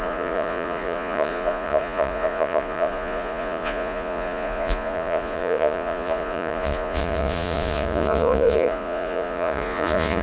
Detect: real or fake fake